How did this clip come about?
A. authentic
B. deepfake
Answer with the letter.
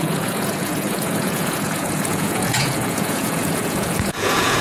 B